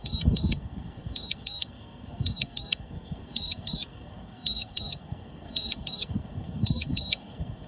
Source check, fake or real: fake